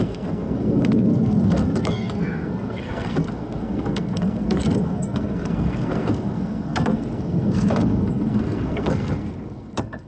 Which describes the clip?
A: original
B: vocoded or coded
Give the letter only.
B